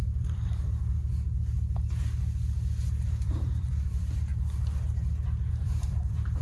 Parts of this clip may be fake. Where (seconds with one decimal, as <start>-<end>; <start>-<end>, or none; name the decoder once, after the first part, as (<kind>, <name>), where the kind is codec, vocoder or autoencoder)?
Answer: 0.0-1.0 (vocoder, BigVGAN v2); 3.0-4.3; 5.5-6.4